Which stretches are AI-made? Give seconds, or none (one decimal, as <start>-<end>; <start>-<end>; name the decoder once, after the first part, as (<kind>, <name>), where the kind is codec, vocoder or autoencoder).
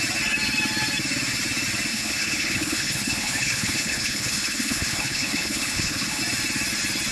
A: 1.9-6.2 (codec, HILCodec)